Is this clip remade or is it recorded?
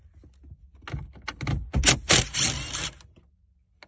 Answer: recorded